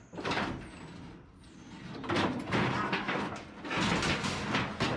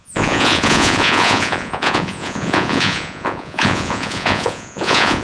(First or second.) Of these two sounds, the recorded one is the first